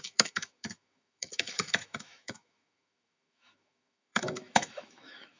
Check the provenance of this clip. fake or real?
fake